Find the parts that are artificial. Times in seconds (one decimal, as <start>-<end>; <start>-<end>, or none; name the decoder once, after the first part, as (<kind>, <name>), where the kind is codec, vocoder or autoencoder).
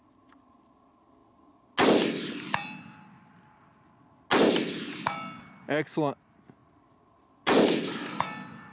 none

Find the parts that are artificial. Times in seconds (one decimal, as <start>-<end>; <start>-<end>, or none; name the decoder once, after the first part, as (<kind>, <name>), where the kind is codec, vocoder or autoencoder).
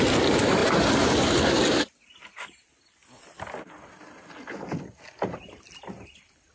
none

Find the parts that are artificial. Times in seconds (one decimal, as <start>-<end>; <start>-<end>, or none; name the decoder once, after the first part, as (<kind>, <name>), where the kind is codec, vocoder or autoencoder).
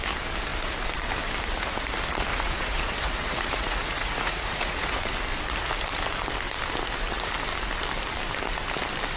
2.3-5.0 (vocoder, Vocos)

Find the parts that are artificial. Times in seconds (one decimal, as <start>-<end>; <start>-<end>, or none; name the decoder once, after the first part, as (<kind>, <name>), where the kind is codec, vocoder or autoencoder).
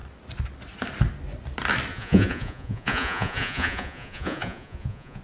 1.9-5.2 (vocoder, Vocos)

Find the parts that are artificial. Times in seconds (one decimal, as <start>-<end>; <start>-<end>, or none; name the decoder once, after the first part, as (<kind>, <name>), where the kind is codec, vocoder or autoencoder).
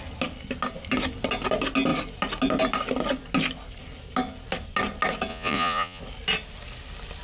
5.3-6.0 (vocoder, Vocos)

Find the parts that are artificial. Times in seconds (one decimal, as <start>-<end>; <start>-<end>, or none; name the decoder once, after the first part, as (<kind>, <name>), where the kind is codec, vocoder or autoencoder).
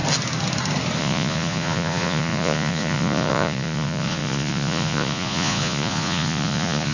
1.0-6.9 (vocoder, Vocos)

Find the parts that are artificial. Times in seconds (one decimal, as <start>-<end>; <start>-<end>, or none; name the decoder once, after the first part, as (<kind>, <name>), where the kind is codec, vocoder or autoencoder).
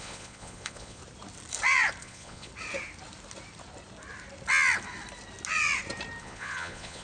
0.0-1.0 (vocoder, Vocos); 2.0-2.5; 6.2-7.0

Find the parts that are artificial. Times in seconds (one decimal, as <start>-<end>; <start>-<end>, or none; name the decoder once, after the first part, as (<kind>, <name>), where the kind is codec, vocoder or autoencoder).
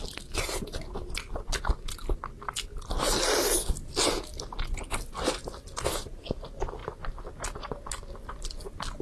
none